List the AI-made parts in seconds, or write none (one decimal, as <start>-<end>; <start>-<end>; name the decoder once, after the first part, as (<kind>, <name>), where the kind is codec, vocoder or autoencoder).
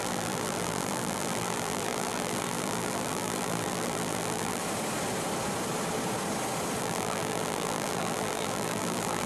0.0-4.6 (vocoder, BigVGAN v2); 6.8-9.3